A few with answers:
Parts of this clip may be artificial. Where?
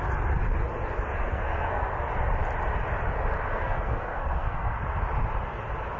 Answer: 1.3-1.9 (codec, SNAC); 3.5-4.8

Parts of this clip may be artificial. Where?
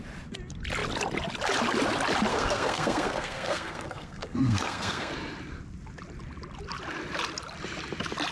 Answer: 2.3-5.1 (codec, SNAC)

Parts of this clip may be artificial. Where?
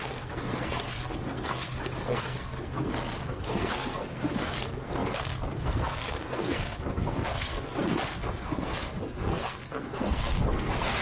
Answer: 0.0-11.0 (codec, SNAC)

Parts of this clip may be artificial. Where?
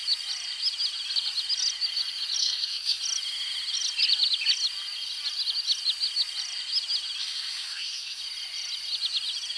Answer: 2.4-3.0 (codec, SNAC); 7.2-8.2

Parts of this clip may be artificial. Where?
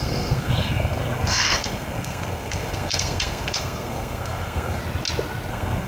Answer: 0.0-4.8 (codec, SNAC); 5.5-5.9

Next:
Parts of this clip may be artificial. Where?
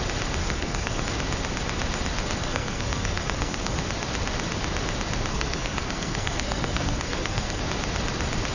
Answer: 0.4-1.0 (codec, SNAC); 2.4-3.8; 5.3-7.6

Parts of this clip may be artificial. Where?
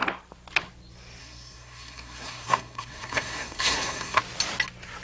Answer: 1.2-4.2 (codec, SNAC)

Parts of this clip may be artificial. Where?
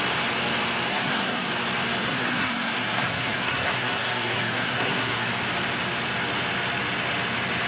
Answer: 0.9-1.5 (codec, SNAC); 2.0-5.3